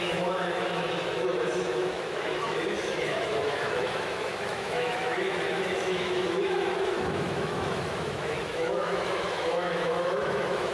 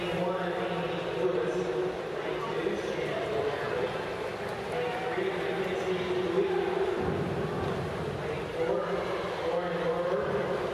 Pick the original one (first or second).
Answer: second